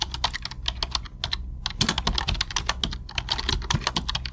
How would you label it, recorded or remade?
recorded